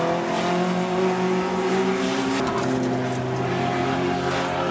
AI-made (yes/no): no